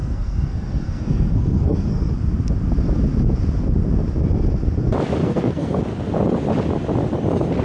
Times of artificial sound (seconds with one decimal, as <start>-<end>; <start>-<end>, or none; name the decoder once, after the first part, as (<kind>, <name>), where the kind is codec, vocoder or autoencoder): 0.0-2.1 (codec, SNAC); 5.2-5.8

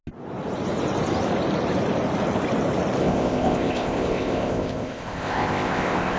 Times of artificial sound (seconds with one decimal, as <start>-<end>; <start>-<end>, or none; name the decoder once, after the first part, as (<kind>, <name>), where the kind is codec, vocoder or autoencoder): 3.0-6.2 (codec, ZipCodec)